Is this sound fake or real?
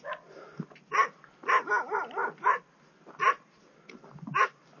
real